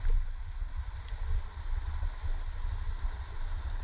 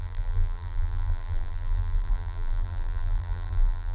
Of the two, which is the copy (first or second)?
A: second